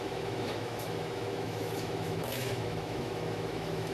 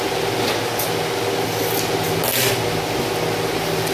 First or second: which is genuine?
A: second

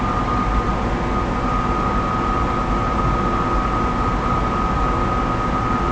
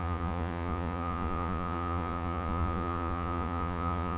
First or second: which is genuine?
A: first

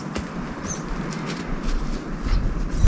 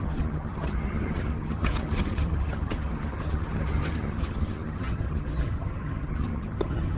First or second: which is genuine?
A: first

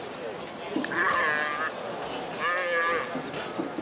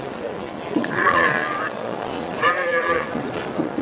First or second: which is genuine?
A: first